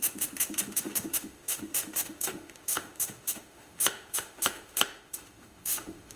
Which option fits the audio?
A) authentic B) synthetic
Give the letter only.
B